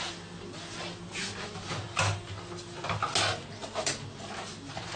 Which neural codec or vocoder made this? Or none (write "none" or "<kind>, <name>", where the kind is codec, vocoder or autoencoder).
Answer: none